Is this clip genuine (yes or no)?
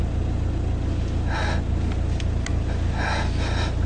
yes